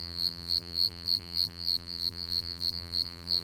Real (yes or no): no